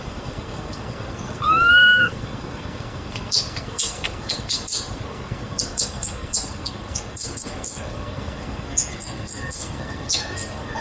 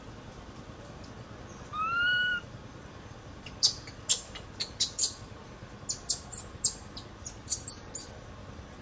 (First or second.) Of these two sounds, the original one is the second